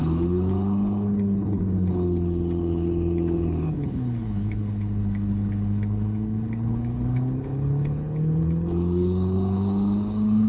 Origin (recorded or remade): remade